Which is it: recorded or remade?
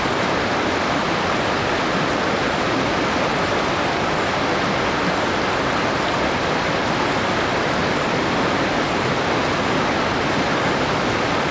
recorded